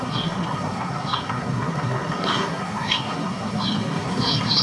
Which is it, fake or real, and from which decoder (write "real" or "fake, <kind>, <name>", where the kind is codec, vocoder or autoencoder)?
fake, codec, SNAC